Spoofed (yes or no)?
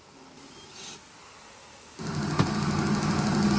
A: no